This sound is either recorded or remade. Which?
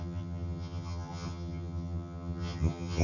remade